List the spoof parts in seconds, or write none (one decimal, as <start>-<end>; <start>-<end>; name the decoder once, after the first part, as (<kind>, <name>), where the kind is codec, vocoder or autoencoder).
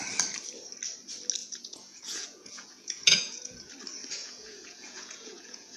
1.4-3.7 (vocoder, Vocos); 4.2-5.8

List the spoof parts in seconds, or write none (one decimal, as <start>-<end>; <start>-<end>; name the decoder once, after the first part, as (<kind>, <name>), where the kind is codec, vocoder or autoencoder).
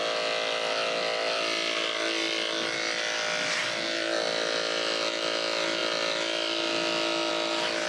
none